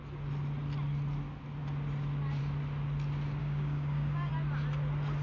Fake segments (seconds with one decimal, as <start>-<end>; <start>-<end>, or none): 3.4-4.3